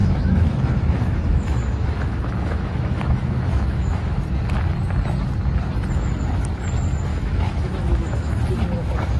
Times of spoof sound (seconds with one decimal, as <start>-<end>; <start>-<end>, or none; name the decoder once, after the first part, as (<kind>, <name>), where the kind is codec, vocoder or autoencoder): 0.0-4.2 (autoencoder, DAC-VAE); 7.1-8.4